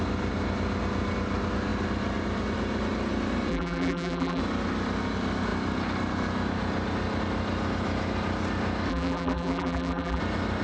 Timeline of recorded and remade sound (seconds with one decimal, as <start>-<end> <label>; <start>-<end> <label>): 0.0-3.5 recorded; 3.5-4.4 remade; 4.4-8.9 recorded; 8.9-10.2 remade; 10.2-10.6 recorded

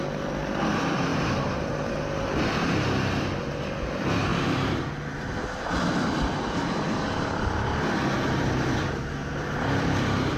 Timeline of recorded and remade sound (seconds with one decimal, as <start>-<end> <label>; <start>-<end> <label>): 0.0-1.1 recorded; 1.1-1.7 remade; 1.7-10.4 recorded